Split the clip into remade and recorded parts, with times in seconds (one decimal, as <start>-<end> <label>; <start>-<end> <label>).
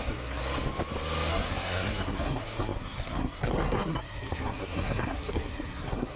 0.0-0.4 remade; 0.4-1.3 recorded; 1.3-6.2 remade